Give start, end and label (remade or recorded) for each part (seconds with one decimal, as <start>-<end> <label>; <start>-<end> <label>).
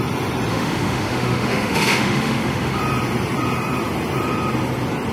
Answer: 0.0-0.5 recorded; 0.5-2.8 remade; 2.8-5.1 recorded